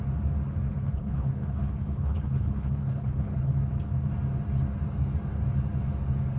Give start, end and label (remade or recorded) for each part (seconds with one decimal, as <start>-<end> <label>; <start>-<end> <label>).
0.0-0.7 recorded; 0.7-3.5 remade; 3.5-6.4 recorded